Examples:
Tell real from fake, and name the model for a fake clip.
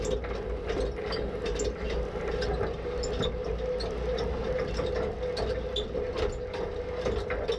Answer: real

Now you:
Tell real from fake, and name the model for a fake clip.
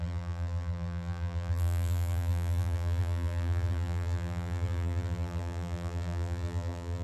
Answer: fake, vocoder, BigVGAN v2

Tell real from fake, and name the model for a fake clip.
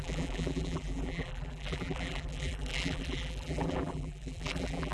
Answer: fake, vocoder, BigVGAN v2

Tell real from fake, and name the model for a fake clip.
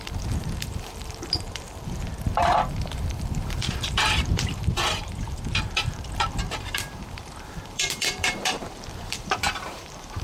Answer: fake, vocoder, BigVGAN v2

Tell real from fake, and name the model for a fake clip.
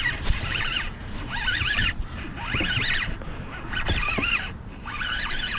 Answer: fake, vocoder, BigVGAN v2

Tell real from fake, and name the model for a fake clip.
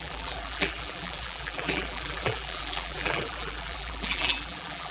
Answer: fake, vocoder, BigVGAN v2